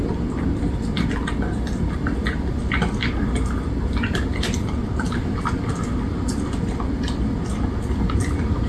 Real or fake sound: real